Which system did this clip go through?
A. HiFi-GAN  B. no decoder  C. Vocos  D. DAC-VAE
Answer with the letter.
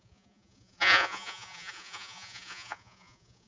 C